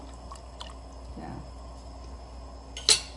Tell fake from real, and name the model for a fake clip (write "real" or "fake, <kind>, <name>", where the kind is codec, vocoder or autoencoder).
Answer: real